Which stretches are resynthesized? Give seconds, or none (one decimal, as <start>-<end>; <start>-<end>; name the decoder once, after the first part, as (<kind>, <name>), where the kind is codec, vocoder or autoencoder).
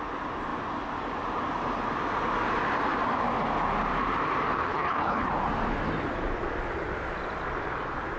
4.7-5.3 (codec, HILCodec)